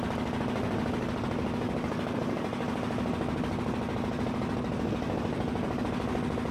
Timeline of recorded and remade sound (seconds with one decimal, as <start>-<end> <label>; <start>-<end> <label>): 0.0-6.5 recorded